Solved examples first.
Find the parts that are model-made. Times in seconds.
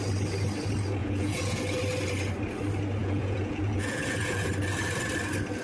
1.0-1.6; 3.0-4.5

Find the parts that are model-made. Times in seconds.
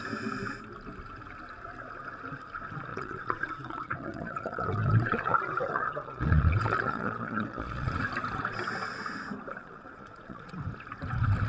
2.9-8.0; 9.6-10.5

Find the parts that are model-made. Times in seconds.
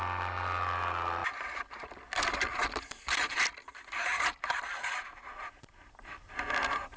none